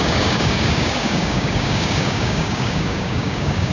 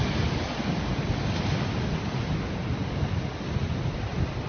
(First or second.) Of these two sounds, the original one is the second